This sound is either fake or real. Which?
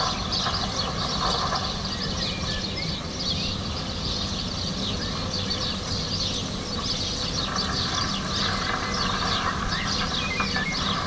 real